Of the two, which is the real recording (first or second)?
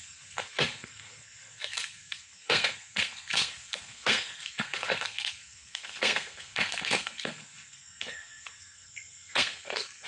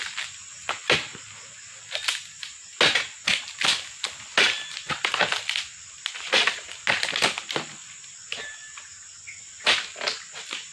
second